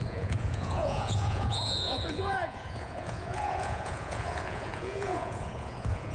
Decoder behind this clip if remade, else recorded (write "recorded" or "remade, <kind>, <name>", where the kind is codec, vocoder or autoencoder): remade, vocoder, Vocos